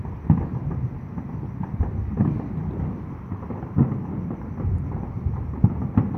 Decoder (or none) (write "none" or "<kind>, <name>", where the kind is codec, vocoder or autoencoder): vocoder, BigVGAN v2